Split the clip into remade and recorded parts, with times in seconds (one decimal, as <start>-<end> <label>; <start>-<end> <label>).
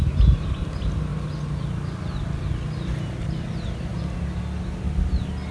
0.0-5.5 recorded